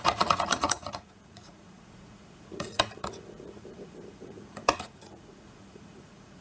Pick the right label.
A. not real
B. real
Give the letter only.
A